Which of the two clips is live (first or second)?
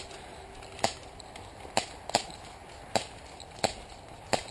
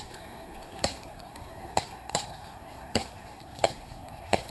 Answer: first